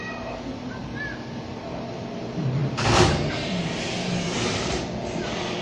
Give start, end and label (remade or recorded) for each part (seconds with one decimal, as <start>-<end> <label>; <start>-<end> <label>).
0.0-5.6 recorded